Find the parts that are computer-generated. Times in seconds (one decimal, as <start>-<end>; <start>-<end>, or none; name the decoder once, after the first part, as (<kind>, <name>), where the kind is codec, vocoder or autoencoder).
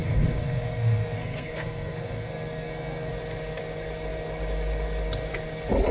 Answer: 0.0-3.1 (codec, SNAC)